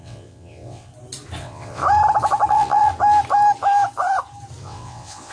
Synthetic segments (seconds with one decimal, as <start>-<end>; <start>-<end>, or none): 0.0-0.9; 1.4-1.8; 2.5-2.9; 4.6-5.3